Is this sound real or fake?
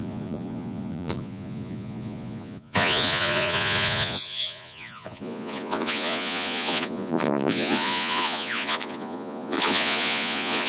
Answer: fake